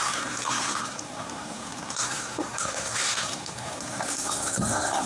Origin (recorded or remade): remade